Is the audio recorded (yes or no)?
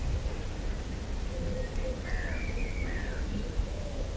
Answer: yes